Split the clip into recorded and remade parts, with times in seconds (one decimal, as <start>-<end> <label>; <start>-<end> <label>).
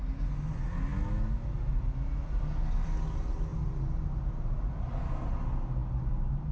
0.0-6.5 recorded